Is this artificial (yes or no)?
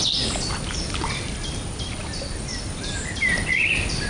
yes